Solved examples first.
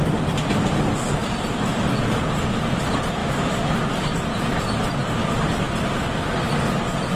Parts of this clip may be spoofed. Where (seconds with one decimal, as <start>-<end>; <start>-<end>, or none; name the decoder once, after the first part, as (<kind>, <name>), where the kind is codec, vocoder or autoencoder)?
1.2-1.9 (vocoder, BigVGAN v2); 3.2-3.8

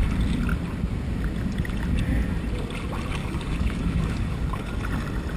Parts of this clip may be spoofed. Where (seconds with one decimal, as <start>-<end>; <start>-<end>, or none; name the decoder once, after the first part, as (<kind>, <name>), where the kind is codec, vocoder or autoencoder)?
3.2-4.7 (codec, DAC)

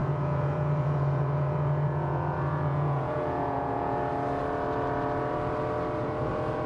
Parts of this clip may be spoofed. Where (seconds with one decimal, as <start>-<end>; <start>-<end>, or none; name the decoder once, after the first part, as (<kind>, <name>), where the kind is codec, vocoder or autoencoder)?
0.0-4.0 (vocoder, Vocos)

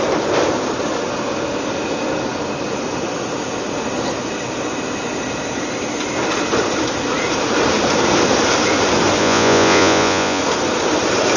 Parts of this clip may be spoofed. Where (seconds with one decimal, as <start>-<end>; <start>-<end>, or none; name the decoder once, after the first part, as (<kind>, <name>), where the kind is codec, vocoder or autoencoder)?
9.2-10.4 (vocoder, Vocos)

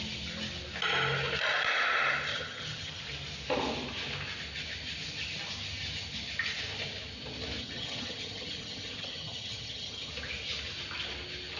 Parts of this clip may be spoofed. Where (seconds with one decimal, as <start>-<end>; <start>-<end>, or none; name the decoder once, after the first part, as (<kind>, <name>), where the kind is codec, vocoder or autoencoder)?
2.3-3.0 (vocoder, HiFi-GAN); 7.6-10.1